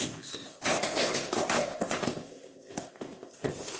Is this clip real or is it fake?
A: fake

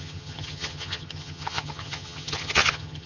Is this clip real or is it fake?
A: fake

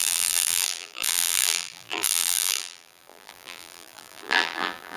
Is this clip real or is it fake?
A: fake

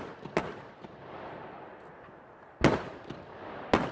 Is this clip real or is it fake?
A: real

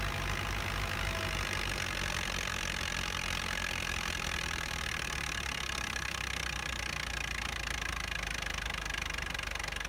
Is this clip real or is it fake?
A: real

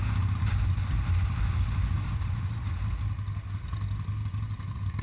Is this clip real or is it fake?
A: real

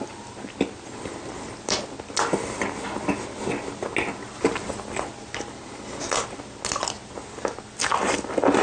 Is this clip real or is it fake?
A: real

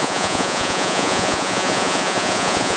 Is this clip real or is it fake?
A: fake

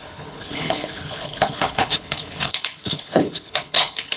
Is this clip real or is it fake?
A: fake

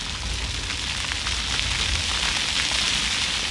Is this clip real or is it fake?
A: real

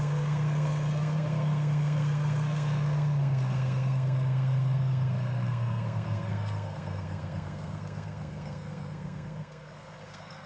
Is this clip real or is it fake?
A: fake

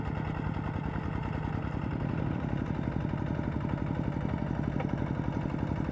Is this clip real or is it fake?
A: real